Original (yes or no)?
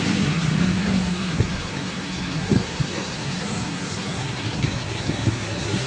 no